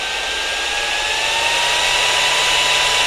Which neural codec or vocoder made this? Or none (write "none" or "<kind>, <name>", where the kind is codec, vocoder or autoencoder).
none